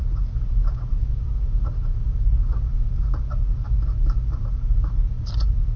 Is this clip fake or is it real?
fake